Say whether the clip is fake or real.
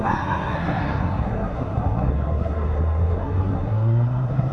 fake